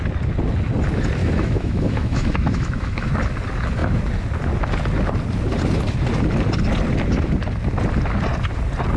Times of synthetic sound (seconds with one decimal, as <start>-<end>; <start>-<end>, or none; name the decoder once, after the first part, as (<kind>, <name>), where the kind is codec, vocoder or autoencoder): 1.2-3.1 (autoencoder, DAC-VAE)